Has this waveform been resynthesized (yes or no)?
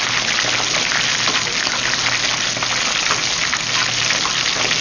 no